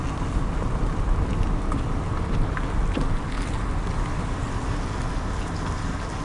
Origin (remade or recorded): recorded